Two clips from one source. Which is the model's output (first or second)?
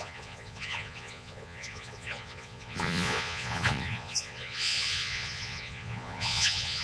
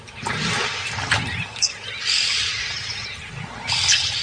first